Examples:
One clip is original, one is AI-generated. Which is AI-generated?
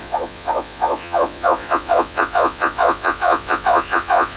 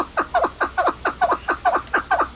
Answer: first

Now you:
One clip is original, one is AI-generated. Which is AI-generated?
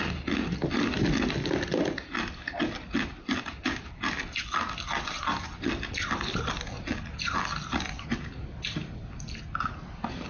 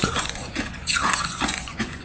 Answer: second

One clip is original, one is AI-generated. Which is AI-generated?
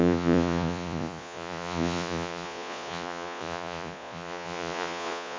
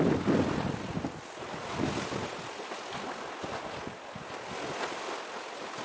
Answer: first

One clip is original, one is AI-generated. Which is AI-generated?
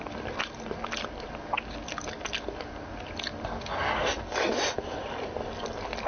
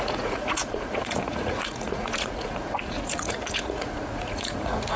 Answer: second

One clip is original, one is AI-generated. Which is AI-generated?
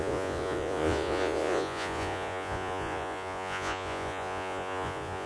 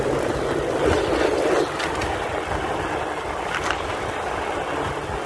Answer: first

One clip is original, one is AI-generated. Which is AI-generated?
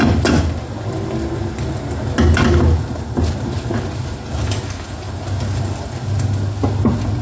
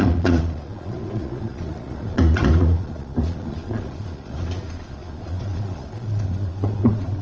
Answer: second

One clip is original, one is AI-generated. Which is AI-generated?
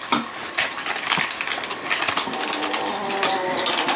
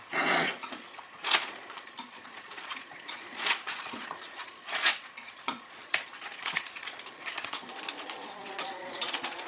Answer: second